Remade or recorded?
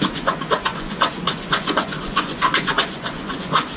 remade